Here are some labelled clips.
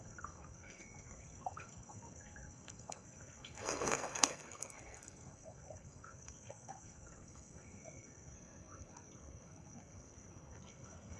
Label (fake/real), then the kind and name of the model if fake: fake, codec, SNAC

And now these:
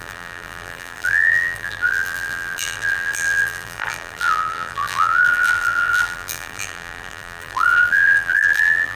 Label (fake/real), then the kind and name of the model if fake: fake, vocoder, BigVGAN v2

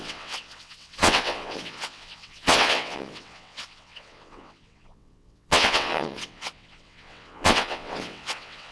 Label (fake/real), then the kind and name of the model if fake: fake, vocoder, WaveNeXt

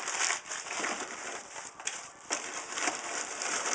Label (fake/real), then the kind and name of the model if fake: fake, vocoder, BigVGAN v2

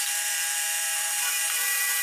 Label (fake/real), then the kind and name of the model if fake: fake, vocoder, BigVGAN v2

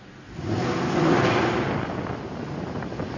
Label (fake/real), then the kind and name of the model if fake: real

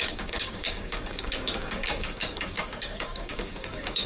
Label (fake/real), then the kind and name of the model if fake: fake, codec, DAC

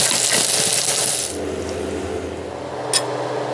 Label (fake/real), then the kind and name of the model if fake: real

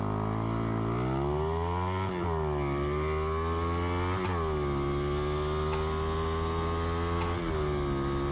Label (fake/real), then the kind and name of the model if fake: real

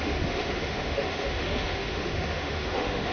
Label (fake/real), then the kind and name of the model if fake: fake, autoencoder, DAC-VAE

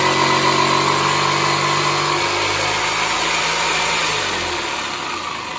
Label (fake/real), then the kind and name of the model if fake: real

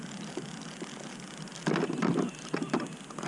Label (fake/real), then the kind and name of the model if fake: real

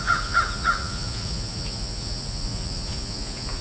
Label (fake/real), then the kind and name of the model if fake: fake, vocoder, Vocos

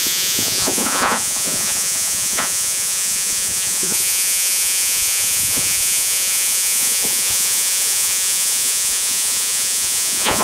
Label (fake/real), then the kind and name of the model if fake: fake, vocoder, Vocos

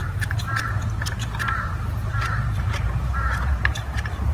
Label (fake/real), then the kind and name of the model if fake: fake, vocoder, BigVGAN v2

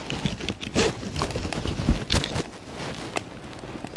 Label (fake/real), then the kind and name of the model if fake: real